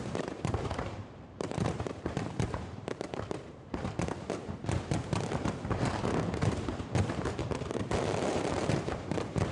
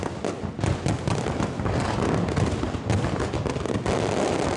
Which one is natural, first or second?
second